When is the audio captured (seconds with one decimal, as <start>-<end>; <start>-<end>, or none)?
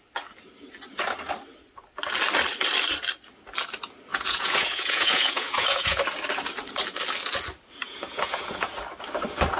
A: 0.0-4.1; 6.0-7.8; 8.7-9.6